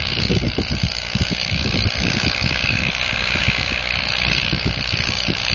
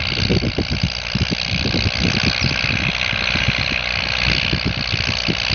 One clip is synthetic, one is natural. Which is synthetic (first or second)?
first